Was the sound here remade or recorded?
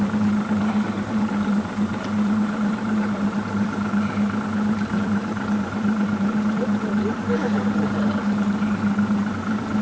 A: remade